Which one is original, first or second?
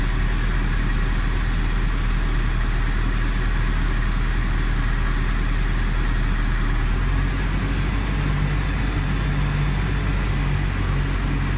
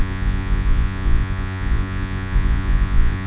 first